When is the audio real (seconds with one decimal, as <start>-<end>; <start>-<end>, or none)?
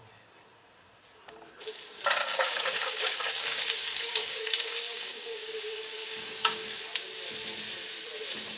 0.0-2.2; 6.8-8.6